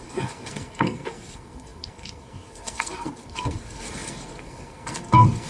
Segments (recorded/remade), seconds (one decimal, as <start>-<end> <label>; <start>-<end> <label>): 0.0-5.5 remade